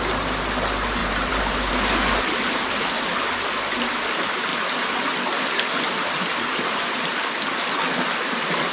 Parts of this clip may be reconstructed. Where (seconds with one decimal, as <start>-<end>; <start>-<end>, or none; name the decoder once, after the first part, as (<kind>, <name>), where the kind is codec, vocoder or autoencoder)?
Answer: 1.0-1.7 (vocoder, BigVGAN v2); 6.3-7.1